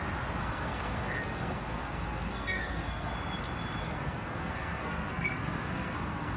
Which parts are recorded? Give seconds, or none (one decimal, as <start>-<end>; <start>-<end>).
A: 0.0-0.4; 3.1-3.8